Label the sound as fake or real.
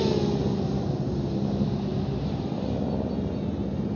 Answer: real